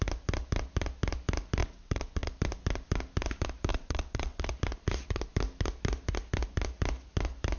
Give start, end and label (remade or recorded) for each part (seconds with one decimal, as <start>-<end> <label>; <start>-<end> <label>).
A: 0.0-1.6 recorded; 1.6-2.3 remade; 2.3-3.7 recorded; 3.7-4.5 remade; 4.5-7.6 recorded